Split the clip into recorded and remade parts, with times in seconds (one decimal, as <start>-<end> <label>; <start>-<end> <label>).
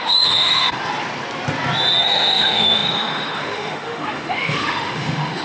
0.0-0.8 remade; 0.8-2.0 recorded; 2.0-5.4 remade